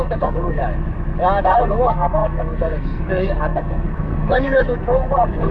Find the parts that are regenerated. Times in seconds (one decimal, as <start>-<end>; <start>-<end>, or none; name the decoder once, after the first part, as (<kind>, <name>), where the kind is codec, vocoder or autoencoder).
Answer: 0.0-0.6 (codec, SNAC); 1.4-5.5